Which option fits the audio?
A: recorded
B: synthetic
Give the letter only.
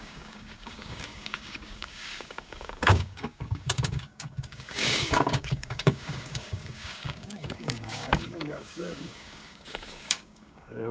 B